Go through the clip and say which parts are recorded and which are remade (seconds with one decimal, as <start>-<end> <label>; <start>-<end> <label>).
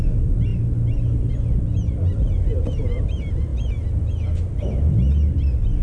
0.0-5.8 recorded